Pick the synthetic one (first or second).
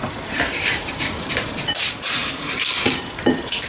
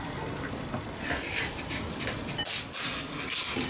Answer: first